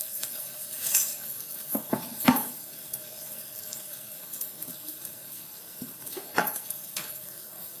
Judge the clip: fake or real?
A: fake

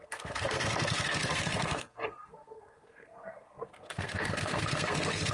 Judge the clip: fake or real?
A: fake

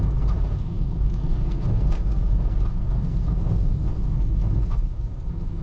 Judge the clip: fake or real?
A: fake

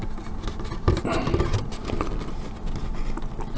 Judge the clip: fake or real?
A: real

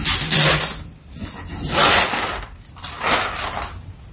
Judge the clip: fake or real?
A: real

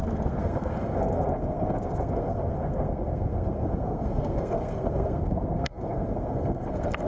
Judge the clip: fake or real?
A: fake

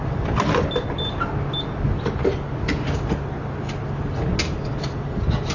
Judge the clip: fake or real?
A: real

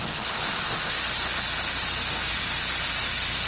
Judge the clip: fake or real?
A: real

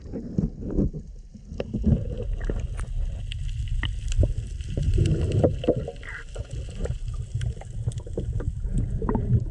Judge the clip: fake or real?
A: real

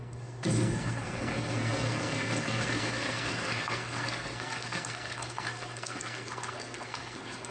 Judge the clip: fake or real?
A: fake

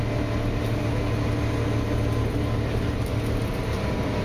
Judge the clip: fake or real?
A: real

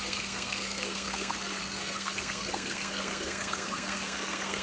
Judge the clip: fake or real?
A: fake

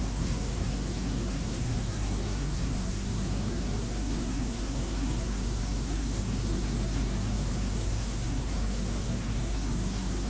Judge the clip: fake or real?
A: fake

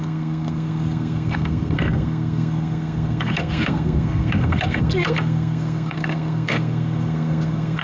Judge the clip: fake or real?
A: fake